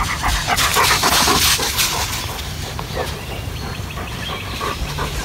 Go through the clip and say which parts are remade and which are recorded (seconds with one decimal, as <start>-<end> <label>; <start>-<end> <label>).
0.0-5.2 recorded